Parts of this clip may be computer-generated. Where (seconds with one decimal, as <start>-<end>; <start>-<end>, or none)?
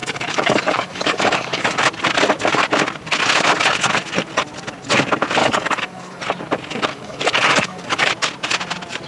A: 0.0-1.8; 5.4-6.2; 6.9-8.1